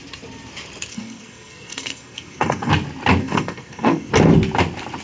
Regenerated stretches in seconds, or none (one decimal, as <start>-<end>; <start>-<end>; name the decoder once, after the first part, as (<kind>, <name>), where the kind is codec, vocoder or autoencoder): 0.9-2.7 (codec, SNAC); 3.2-4.1